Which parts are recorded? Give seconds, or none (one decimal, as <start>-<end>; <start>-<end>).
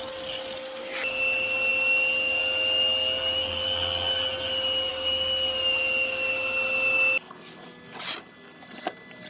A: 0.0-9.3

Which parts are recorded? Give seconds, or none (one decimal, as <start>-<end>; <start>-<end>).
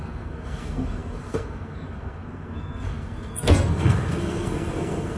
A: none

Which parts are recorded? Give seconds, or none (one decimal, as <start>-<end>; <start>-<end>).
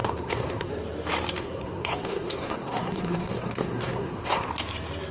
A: 0.7-1.4; 4.5-5.1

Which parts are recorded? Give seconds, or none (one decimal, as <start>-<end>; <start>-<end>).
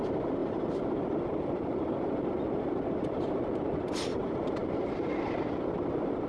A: 0.0-0.4; 0.9-4.1; 5.1-6.3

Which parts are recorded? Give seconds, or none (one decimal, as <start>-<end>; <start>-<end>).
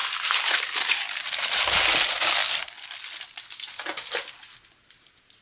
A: 0.9-5.4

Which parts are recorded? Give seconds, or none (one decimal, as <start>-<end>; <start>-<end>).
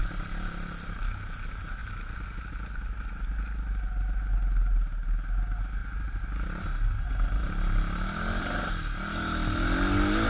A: 0.0-10.3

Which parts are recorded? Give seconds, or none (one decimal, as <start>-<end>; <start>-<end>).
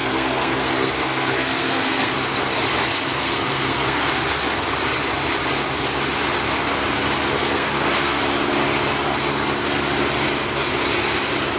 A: 2.1-3.2; 4.1-7.4; 8.2-11.6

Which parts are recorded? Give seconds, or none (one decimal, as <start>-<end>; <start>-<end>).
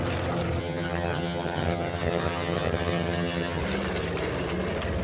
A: 0.0-0.6; 3.6-5.0